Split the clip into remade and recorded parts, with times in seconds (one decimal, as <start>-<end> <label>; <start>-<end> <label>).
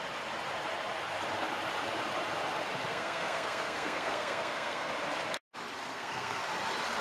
0.0-2.9 recorded; 2.9-4.9 remade; 4.9-5.8 recorded; 5.8-6.4 remade; 6.4-7.0 recorded